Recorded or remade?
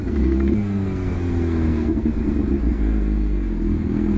remade